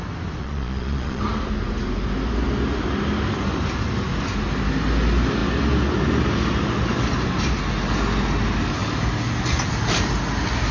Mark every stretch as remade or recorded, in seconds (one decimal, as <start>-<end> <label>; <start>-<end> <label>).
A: 0.0-0.4 recorded; 0.4-1.2 remade; 1.2-10.7 recorded